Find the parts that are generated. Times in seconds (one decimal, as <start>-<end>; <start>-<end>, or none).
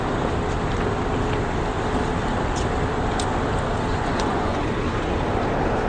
3.9-4.7